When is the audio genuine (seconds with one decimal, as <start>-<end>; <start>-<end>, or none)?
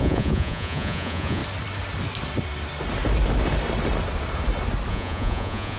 1.4-4.9